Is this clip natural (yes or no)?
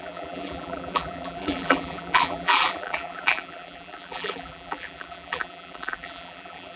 no